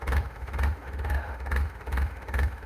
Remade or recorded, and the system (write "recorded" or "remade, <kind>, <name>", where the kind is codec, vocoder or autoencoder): remade, autoencoder, DAC-VAE